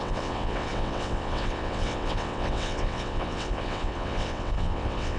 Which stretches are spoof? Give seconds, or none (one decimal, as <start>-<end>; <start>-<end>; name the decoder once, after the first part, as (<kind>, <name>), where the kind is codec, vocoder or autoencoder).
0.0-5.2 (vocoder, WaveNeXt)